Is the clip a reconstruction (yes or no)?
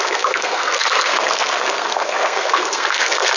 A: yes